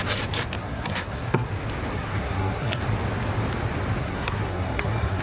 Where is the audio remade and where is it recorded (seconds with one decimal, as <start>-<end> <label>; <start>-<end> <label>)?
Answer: 0.0-0.6 recorded; 0.6-1.5 remade; 1.5-1.9 recorded; 1.9-2.8 remade; 2.8-4.0 recorded; 4.0-5.2 remade

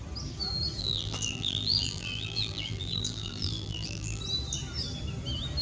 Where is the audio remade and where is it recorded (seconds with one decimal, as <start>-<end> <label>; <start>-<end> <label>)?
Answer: 0.0-0.8 recorded; 0.8-4.2 remade; 4.2-5.6 recorded

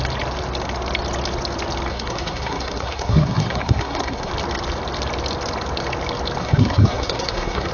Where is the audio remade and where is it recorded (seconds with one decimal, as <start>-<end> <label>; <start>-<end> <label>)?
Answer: 0.0-1.9 recorded; 1.9-4.3 remade; 4.3-6.4 recorded; 6.4-7.7 remade

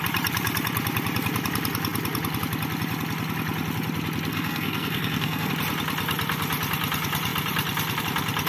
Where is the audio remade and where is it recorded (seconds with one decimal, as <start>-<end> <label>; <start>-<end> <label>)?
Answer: 0.0-4.3 recorded; 4.3-5.5 remade; 5.5-8.5 recorded

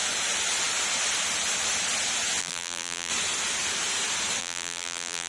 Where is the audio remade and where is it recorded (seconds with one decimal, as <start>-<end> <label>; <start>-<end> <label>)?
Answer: 0.0-2.4 recorded; 2.4-3.1 remade; 3.1-4.4 recorded; 4.4-5.3 remade

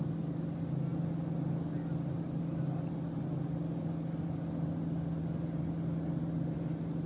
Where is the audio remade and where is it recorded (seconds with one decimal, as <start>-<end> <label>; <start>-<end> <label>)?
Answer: 0.0-7.1 recorded

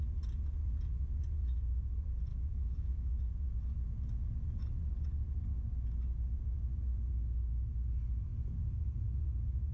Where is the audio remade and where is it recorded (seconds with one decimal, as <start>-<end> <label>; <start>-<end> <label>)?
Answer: 0.0-2.3 recorded; 2.3-3.2 remade; 3.2-9.7 recorded

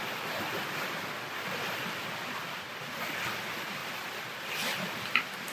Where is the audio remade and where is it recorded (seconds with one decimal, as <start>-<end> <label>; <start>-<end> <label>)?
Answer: 0.0-3.8 remade; 3.8-4.9 recorded; 4.9-5.5 remade